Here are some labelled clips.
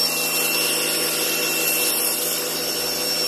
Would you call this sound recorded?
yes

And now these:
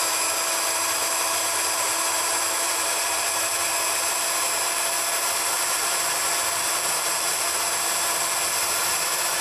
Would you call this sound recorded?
no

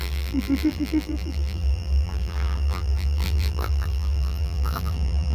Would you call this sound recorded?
no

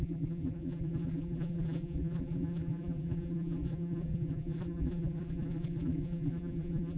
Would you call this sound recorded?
no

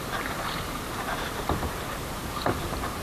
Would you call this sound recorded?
no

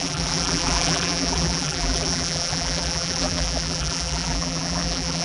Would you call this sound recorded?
no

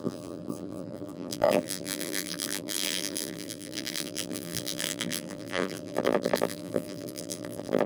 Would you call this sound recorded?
no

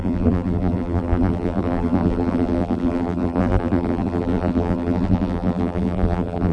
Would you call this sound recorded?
no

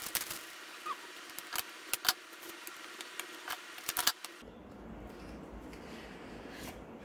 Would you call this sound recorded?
yes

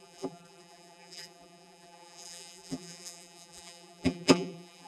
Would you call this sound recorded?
no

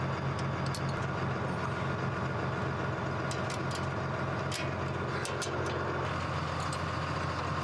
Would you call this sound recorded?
yes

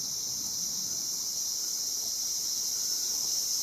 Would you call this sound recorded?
no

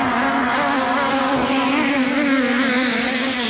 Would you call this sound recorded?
yes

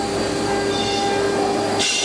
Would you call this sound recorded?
yes